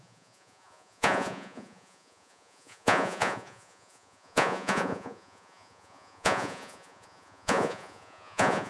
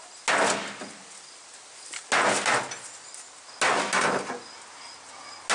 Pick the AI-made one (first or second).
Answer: first